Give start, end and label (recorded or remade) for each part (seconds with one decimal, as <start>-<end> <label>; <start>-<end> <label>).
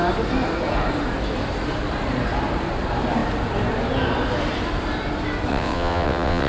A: 0.0-5.5 recorded; 5.5-6.5 remade